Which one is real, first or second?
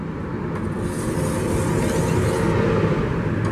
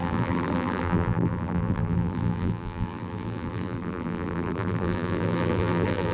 first